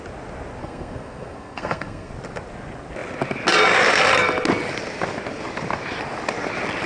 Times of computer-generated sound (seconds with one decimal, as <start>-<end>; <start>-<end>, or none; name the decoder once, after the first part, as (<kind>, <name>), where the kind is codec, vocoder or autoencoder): 0.6-2.1 (codec, SNAC)